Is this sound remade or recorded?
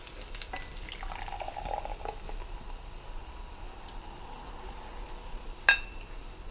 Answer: recorded